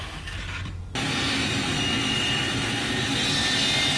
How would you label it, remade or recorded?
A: recorded